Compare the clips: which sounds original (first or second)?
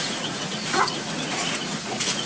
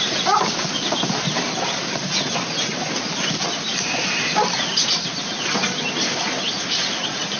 second